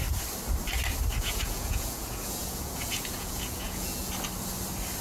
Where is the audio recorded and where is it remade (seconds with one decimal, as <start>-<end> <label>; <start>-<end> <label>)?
0.0-1.1 recorded; 1.1-4.1 remade; 4.1-5.0 recorded